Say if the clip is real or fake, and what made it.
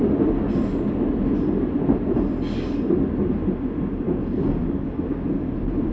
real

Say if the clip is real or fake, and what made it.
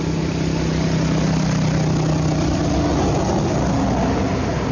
real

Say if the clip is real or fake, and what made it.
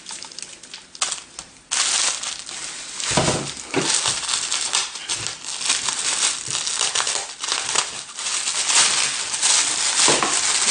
real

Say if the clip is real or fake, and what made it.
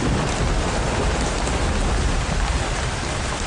real